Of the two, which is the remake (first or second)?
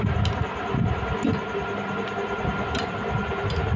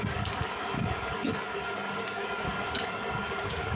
second